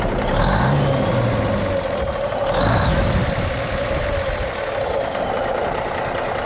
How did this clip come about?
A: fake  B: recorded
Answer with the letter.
B